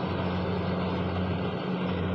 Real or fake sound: real